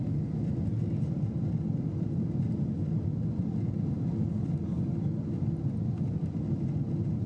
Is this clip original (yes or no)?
no